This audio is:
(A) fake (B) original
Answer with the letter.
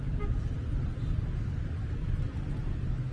B